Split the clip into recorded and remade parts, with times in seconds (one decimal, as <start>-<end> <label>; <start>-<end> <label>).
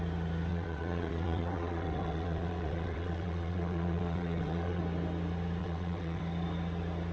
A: 0.0-0.5 recorded; 0.5-4.8 remade; 4.8-5.6 recorded; 5.6-6.2 remade; 6.2-7.1 recorded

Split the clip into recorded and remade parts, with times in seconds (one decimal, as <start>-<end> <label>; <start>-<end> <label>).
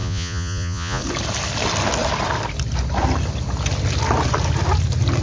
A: 0.0-1.0 remade; 1.0-5.2 recorded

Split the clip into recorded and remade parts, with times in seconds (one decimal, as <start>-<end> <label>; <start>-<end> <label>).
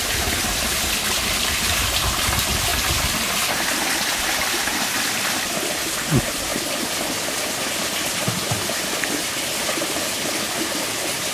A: 0.0-11.3 recorded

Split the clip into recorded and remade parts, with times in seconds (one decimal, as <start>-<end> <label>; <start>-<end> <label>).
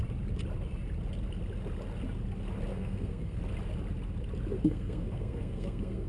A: 0.0-2.7 recorded; 2.7-3.4 remade; 3.4-4.5 recorded; 4.5-6.1 remade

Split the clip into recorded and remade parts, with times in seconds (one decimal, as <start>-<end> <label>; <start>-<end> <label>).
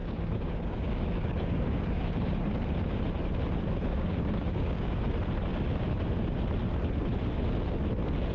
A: 0.0-2.3 remade; 2.3-3.9 recorded; 3.9-5.1 remade; 5.1-8.3 recorded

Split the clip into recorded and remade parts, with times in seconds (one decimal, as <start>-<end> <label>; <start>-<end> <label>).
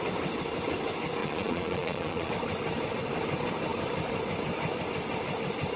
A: 0.0-1.2 recorded; 1.2-2.3 remade; 2.3-5.8 recorded